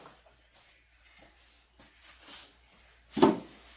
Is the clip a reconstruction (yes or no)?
no